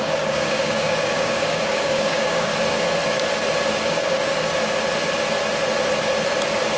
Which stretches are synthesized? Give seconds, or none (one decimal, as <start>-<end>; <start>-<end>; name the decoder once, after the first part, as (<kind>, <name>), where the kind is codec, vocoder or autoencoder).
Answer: 0.0-2.5 (codec, DAC); 3.9-4.5